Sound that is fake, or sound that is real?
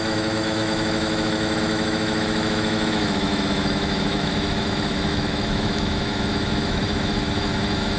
fake